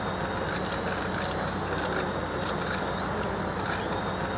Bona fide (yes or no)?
yes